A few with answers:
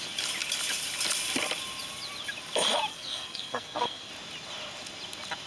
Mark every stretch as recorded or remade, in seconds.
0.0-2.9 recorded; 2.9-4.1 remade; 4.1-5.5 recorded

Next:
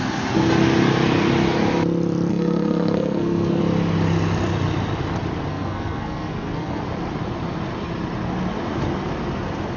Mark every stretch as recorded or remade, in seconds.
0.0-2.3 recorded; 2.3-3.6 remade; 3.6-5.5 recorded; 5.5-6.8 remade; 6.8-9.8 recorded

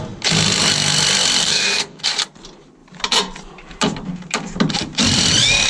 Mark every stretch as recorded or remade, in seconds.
0.0-1.4 recorded; 1.4-2.0 remade; 2.0-5.7 recorded

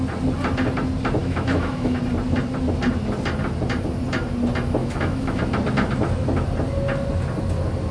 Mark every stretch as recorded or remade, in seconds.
0.0-1.2 recorded; 1.2-2.0 remade; 2.0-4.8 recorded; 4.8-5.4 remade; 5.4-7.9 recorded

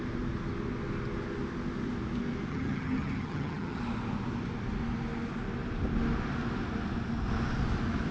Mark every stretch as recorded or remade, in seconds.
0.0-2.5 recorded; 2.5-3.8 remade; 3.8-8.1 recorded

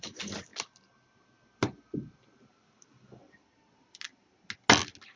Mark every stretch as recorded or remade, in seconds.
0.0-0.5 remade; 0.5-2.5 recorded; 2.5-3.2 remade; 3.2-5.2 recorded